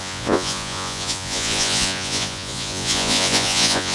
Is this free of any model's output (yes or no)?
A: no